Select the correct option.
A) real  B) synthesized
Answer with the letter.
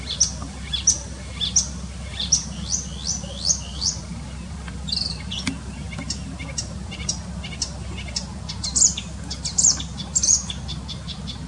A